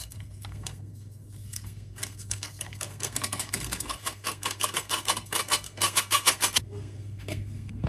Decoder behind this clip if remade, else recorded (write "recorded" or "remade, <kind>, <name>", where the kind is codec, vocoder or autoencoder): remade, codec, SNAC